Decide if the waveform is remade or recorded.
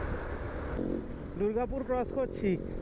recorded